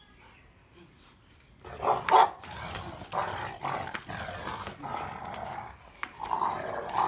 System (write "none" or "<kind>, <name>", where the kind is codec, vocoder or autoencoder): none